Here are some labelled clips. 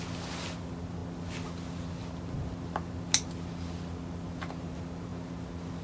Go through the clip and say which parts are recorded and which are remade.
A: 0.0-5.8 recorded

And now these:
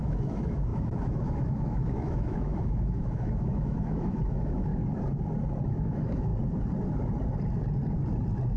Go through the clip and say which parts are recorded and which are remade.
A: 0.0-4.7 remade; 4.7-5.7 recorded; 5.7-6.3 remade; 6.3-8.6 recorded

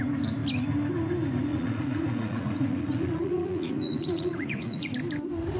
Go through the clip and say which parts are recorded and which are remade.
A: 0.0-1.5 recorded; 1.5-4.9 remade; 4.9-5.6 recorded

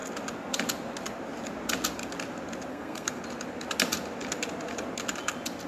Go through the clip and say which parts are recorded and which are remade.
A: 0.0-2.7 recorded; 2.7-3.2 remade; 3.2-5.7 recorded

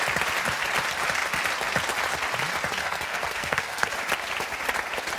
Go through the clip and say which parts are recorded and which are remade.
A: 0.0-2.8 recorded; 2.8-3.9 remade; 3.9-5.2 recorded